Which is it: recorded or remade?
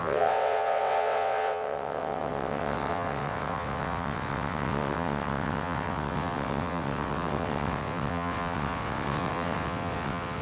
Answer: remade